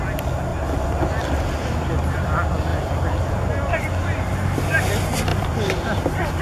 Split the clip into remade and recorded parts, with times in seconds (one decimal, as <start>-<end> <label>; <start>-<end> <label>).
0.0-6.4 recorded